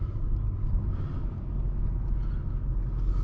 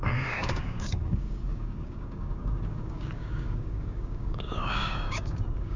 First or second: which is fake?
second